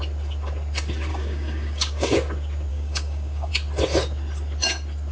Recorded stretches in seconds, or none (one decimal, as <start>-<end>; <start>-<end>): 0.0-1.1; 2.1-2.7; 3.5-5.1